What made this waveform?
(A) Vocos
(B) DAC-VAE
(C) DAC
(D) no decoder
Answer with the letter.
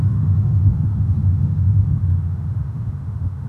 B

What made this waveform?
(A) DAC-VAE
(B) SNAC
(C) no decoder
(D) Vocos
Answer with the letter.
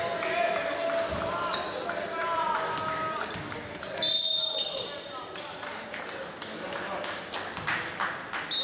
C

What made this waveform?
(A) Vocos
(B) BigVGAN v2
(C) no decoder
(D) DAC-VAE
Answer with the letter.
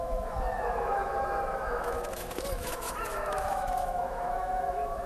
D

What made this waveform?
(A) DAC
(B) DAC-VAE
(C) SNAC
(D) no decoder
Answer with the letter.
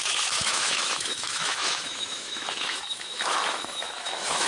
B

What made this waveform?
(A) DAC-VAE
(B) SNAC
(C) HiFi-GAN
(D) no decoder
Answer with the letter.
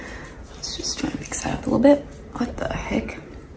D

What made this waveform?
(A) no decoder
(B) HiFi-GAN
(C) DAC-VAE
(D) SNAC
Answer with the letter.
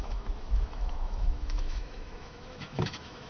C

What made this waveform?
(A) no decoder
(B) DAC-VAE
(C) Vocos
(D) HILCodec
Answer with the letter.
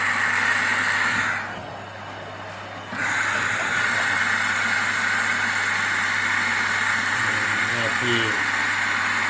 A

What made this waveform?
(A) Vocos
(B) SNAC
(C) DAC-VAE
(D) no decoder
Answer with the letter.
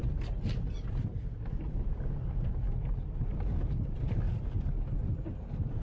D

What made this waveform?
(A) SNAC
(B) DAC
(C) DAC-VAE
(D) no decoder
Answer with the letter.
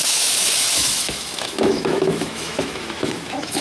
C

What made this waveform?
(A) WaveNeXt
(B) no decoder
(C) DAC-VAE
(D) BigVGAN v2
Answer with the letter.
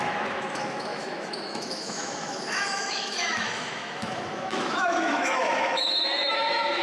C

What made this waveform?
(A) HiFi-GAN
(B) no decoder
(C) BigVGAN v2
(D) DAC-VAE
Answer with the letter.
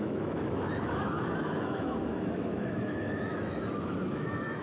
D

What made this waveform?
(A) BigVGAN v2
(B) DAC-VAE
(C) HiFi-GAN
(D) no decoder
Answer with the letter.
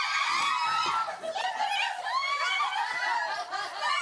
D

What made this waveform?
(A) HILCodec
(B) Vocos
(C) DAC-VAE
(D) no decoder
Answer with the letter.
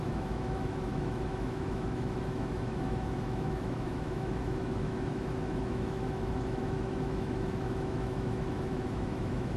C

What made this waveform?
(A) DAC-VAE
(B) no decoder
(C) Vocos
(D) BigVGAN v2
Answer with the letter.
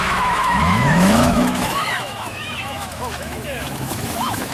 A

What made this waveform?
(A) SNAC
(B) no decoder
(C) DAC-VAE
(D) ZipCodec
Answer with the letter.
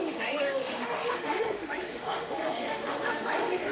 C